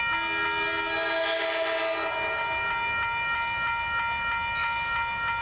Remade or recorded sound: recorded